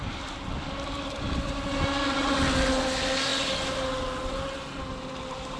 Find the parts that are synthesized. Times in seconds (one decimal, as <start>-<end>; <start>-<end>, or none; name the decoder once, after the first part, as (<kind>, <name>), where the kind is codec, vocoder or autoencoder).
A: none